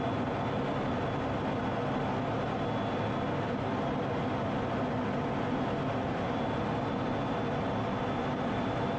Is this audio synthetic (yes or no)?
no